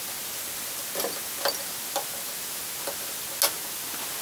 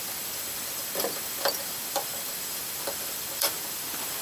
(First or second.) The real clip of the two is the first